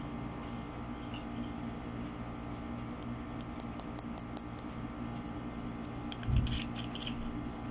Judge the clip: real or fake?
real